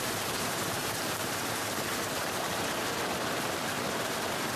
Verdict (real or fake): fake